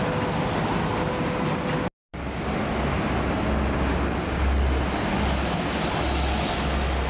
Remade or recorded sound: recorded